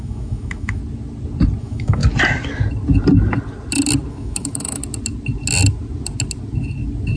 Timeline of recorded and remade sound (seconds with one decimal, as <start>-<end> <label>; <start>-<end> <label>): 0.0-0.8 remade; 0.8-1.6 recorded; 1.6-2.0 remade; 2.0-4.1 recorded; 4.1-4.8 remade; 4.8-7.2 recorded